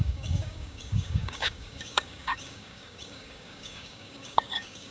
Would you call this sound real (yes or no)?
no